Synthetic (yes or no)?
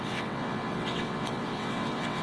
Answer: yes